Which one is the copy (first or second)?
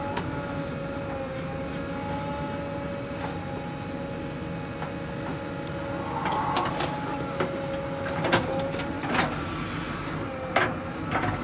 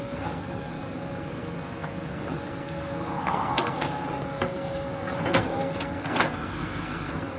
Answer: second